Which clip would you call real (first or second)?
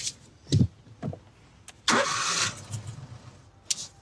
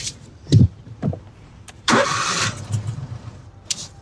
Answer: first